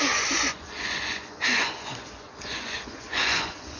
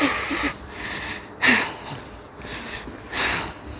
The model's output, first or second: first